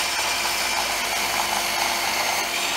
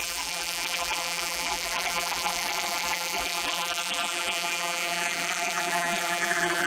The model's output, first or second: second